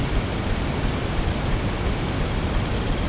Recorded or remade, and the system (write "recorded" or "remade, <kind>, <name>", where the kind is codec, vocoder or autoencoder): recorded